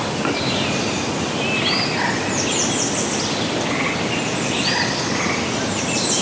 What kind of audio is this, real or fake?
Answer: real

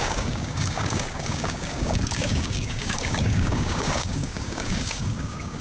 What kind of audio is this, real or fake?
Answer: fake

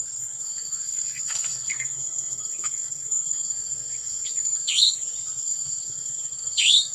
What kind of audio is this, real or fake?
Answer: fake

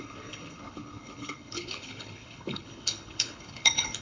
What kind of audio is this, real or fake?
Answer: fake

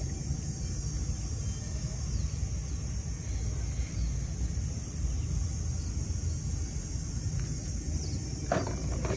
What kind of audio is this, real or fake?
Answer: real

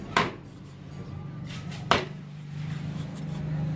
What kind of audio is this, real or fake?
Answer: real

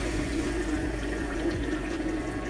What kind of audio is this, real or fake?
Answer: fake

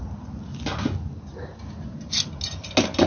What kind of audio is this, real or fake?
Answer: real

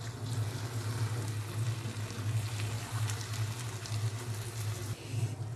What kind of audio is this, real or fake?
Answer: real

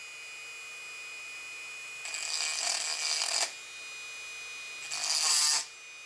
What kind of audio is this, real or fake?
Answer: real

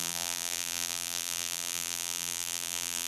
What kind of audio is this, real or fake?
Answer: fake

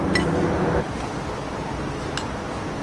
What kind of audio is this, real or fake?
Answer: real